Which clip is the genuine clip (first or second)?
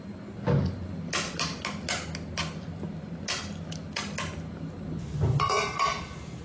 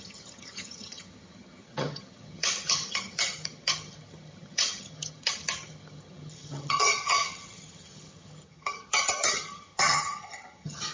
first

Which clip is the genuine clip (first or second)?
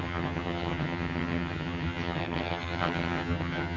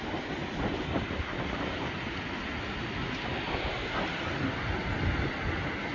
second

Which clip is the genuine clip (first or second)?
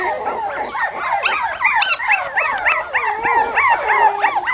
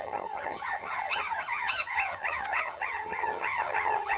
first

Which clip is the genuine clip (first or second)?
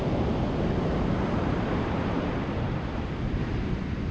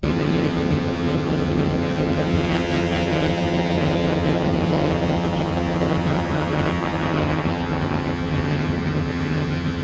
first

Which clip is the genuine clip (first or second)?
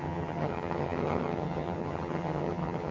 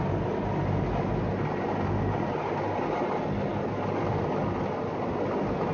second